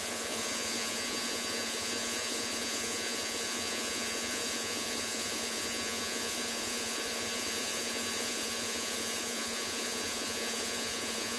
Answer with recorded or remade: remade